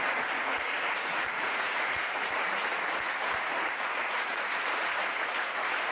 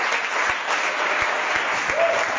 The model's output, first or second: first